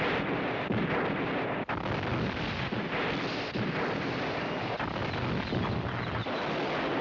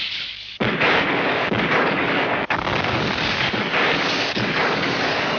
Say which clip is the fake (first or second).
second